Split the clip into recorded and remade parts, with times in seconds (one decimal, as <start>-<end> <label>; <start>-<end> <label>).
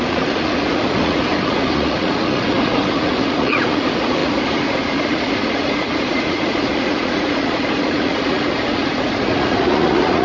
0.0-10.2 remade